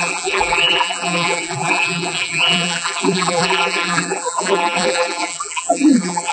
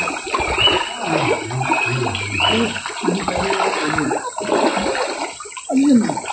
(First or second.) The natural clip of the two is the second